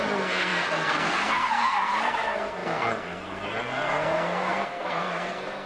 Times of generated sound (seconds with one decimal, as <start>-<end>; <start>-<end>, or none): 0.0-5.7